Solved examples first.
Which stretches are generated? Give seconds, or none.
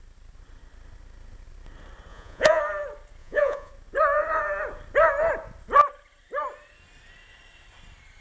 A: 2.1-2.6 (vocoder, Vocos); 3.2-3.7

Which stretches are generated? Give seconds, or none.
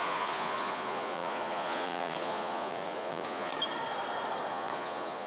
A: 0.0-3.5 (vocoder, Vocos); 4.5-5.3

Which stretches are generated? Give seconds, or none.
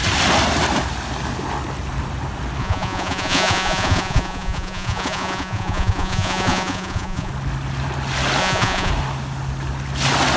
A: 2.6-7.3 (vocoder, Vocos); 8.4-8.9